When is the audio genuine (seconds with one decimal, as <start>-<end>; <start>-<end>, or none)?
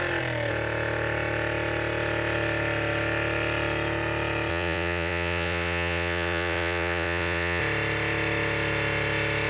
0.0-4.5; 7.6-9.5